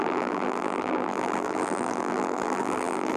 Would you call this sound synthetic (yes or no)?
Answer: yes